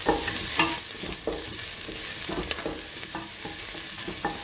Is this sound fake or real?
real